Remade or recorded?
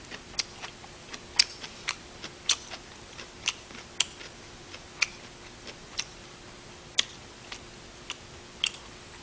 recorded